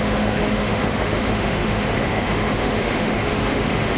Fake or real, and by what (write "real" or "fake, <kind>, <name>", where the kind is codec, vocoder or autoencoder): fake, autoencoder, DAC-VAE